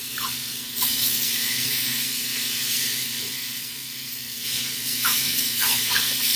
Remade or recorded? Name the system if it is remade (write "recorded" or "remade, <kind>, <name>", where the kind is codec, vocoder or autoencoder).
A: remade, codec, SNAC